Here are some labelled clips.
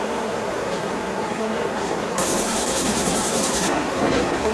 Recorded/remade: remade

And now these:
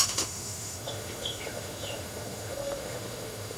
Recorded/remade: remade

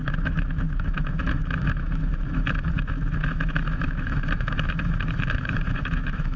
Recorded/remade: remade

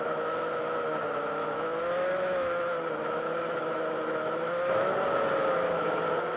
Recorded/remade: remade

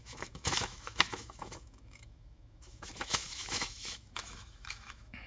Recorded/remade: remade